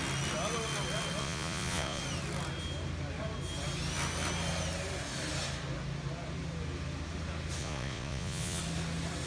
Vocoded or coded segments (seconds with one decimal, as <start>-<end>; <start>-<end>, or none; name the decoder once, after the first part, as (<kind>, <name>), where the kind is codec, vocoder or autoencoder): 1.2-2.0 (vocoder, Vocos); 7.6-8.6

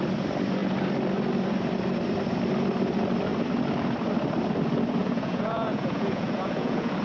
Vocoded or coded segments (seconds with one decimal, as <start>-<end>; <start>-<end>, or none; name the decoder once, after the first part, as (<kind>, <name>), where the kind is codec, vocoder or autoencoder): 5.0-7.0 (vocoder, Vocos)

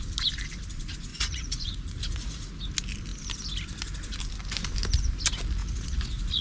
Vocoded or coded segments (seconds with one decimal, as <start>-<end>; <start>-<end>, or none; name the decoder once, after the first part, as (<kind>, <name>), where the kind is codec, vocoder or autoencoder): 1.1-2.5 (vocoder, Vocos); 5.6-6.4

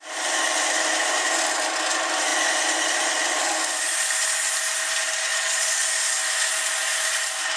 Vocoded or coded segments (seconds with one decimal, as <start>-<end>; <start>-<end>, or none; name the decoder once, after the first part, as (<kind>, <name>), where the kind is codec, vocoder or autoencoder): 5.3-5.8 (vocoder, Vocos)

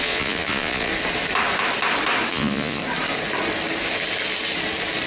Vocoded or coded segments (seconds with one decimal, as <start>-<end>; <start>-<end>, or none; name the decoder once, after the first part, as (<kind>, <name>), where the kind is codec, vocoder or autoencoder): 0.0-0.9 (vocoder, Vocos); 2.3-2.8

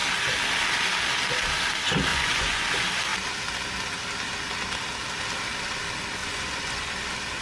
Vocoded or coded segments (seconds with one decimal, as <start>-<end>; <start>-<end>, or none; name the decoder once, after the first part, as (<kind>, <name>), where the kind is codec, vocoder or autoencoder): 2.1-2.6 (vocoder, Vocos); 6.2-6.9

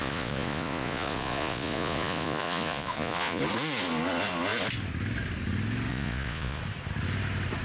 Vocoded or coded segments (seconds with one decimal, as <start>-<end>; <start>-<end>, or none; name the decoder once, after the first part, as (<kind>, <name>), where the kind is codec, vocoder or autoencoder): 0.0-3.4 (vocoder, Vocos); 5.9-6.6